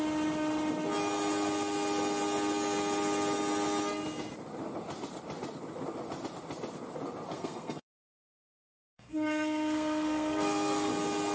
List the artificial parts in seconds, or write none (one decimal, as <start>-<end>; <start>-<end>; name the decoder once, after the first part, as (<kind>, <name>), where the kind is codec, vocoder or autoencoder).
7.3-10.9 (codec, SNAC)